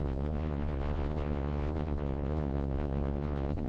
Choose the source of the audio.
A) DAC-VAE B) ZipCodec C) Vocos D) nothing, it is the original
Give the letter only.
C